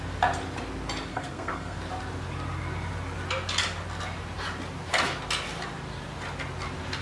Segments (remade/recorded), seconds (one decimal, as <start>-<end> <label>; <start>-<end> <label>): 0.0-1.1 recorded; 1.1-1.8 remade; 1.8-7.0 recorded